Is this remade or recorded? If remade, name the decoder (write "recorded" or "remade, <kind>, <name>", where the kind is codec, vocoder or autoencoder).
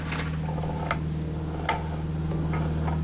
recorded